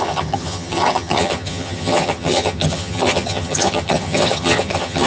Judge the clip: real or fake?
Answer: fake